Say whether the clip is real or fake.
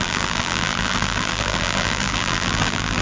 fake